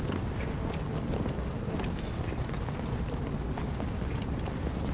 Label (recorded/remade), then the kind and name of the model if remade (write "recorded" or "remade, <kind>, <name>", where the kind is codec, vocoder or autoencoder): recorded